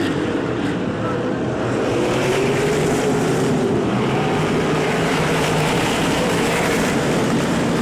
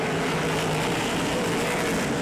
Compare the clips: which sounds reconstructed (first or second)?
first